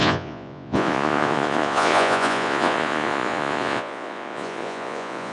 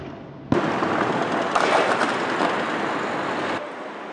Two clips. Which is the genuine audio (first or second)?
second